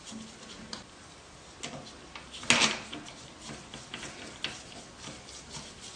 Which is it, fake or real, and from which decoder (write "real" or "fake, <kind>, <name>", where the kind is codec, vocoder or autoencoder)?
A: real